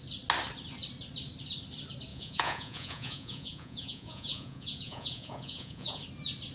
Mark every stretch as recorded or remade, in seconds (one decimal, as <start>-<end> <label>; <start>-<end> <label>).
0.0-2.1 recorded; 2.1-6.0 remade; 6.0-6.5 recorded